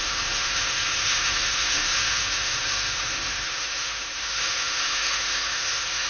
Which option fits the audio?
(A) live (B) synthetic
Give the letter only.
B